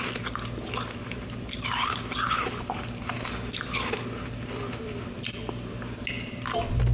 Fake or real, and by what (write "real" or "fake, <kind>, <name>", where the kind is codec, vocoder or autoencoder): real